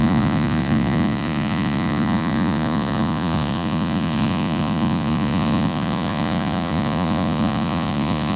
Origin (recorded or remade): remade